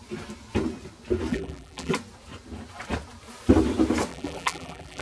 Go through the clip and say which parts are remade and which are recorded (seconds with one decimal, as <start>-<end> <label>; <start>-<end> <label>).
0.0-1.3 recorded; 1.3-1.9 remade; 1.9-4.1 recorded; 4.1-5.0 remade